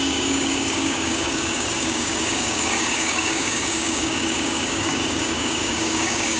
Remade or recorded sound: remade